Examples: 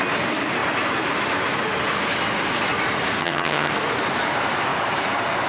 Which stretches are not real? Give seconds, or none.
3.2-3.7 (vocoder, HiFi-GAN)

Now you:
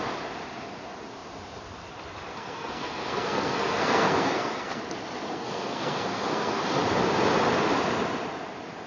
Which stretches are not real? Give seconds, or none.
2.3-4.8 (codec, SNAC); 5.3-6.6